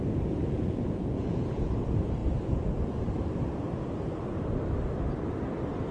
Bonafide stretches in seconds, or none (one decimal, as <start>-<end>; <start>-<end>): 0.0-0.4; 1.4-5.9